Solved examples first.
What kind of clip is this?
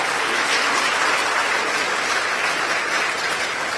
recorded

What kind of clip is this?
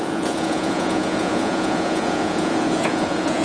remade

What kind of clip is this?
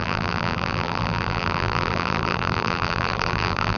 remade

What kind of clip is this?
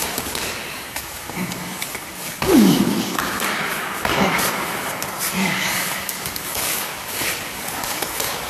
remade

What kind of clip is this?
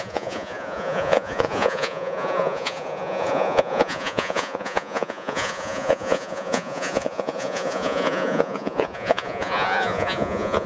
remade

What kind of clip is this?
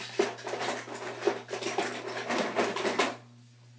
recorded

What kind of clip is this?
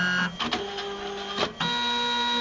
recorded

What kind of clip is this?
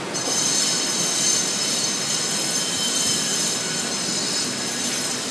recorded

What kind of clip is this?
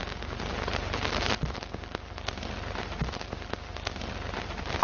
recorded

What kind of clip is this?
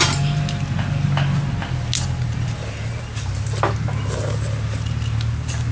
recorded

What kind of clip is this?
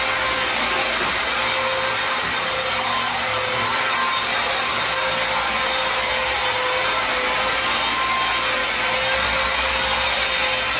recorded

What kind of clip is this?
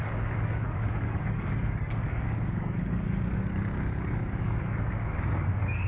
remade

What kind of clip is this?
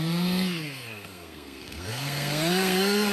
remade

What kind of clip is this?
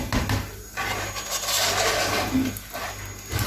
recorded